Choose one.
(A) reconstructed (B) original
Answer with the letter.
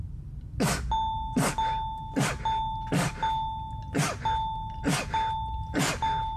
B